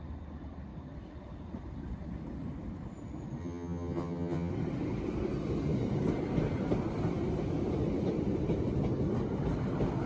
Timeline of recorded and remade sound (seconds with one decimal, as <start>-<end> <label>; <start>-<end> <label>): 0.0-3.4 recorded; 3.4-4.5 remade; 4.5-10.1 recorded